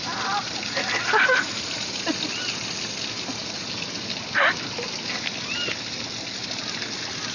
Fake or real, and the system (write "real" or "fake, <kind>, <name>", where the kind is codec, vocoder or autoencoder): real